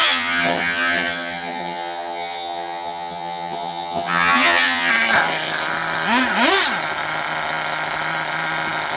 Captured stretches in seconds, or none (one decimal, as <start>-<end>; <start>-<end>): 4.9-9.0

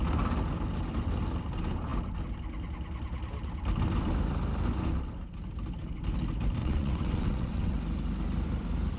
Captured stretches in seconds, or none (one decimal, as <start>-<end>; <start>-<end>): 0.0-6.6; 7.8-9.0

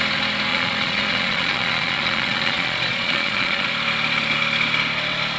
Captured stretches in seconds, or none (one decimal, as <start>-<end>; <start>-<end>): 0.0-0.5; 3.7-5.4